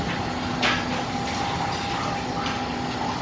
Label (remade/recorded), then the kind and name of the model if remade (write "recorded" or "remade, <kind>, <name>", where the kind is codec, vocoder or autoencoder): recorded